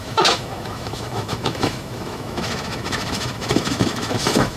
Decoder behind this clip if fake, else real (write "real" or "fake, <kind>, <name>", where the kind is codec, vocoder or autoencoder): fake, autoencoder, DAC-VAE